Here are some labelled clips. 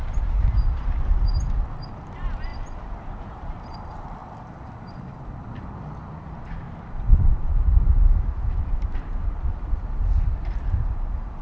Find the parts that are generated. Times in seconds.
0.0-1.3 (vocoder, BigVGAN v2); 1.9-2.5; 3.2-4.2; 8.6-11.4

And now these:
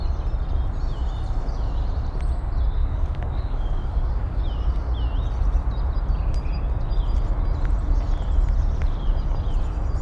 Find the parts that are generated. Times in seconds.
2.8-4.4 (codec, DAC)

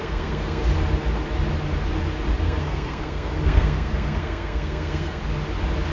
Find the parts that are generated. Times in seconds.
0.0-0.6 (codec, SNAC); 2.4-5.2

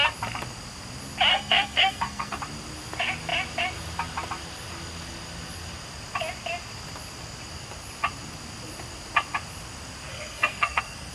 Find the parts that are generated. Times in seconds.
1.3-2.4 (codec, SNAC); 10.1-11.1

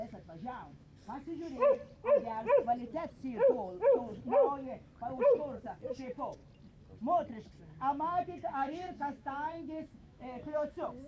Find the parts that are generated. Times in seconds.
0.0-0.9 (autoencoder, DAC-VAE); 5.9-6.4; 7.6-11.1

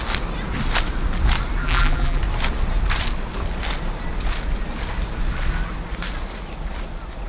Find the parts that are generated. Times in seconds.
1.6-2.2 (vocoder, BigVGAN v2)